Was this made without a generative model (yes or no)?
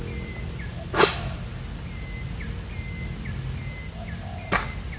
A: yes